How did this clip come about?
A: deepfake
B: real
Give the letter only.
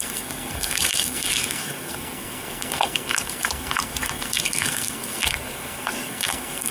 A